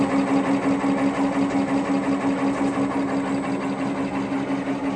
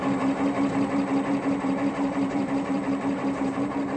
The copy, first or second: second